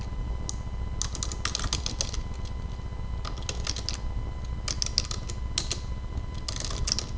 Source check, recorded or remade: recorded